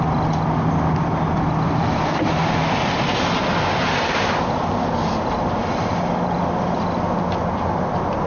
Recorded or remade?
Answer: recorded